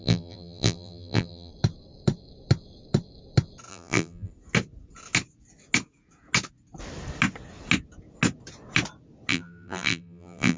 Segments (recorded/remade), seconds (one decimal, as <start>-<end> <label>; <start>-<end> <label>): 0.0-1.5 remade; 1.5-3.7 recorded; 3.7-4.3 remade; 4.3-9.3 recorded; 9.3-10.6 remade